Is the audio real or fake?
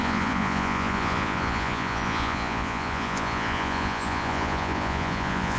fake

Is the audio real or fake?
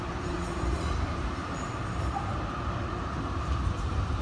fake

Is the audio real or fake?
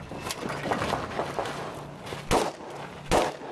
real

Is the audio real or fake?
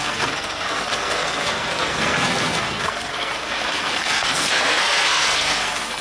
fake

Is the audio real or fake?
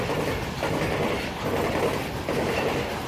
real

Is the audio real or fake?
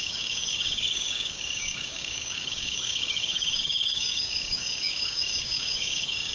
fake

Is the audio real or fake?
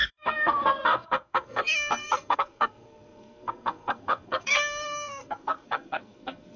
fake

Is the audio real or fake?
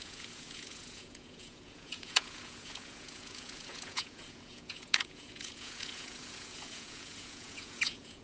fake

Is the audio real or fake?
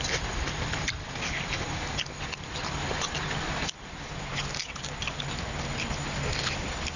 real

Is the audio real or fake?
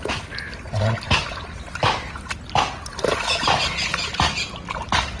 real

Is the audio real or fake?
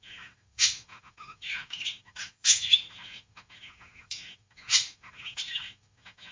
fake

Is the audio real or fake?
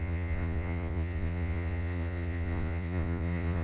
fake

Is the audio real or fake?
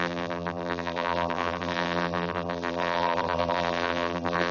fake